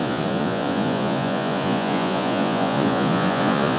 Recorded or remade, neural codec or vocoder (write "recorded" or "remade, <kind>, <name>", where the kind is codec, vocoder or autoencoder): remade, vocoder, Vocos